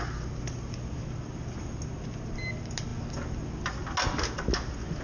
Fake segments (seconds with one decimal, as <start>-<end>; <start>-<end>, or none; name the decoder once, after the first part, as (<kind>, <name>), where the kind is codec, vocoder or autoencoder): none